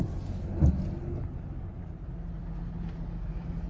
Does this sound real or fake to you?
real